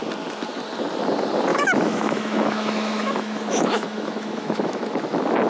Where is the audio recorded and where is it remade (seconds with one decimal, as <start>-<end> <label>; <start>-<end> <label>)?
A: 0.0-1.5 recorded; 1.5-4.8 remade; 4.8-5.5 recorded